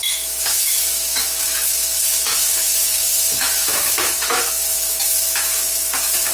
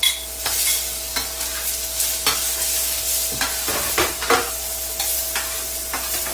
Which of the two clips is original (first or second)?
second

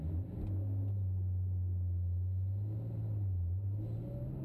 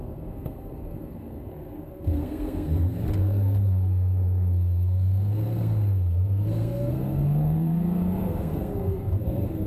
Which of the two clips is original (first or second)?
first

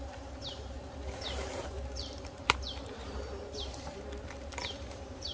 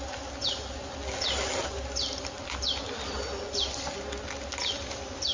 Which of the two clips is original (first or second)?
second